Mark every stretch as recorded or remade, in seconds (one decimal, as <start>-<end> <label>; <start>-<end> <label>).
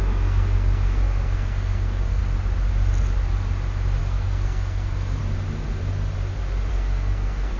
0.0-2.2 remade; 2.2-4.0 recorded; 4.0-5.2 remade; 5.2-6.7 recorded; 6.7-7.6 remade